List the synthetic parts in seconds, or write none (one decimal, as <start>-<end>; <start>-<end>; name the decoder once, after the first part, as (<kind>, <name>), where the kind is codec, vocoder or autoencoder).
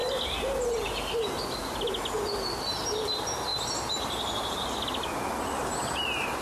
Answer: 3.5-4.5 (vocoder, BigVGAN v2)